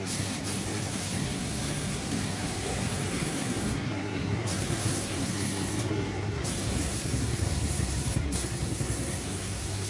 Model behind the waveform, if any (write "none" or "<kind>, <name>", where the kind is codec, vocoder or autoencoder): codec, SNAC